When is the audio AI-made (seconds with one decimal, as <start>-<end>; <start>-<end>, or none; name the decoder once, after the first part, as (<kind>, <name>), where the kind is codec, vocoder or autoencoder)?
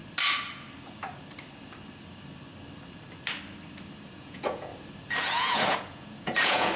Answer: 4.1-4.7 (vocoder, Vocos); 5.2-6.8